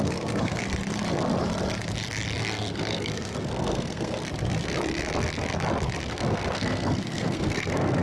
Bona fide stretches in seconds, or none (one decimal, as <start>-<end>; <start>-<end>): 0.6-2.4; 4.2-6.1